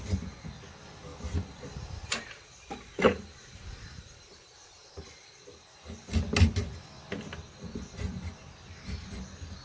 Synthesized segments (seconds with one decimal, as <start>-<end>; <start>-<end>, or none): 1.1-4.9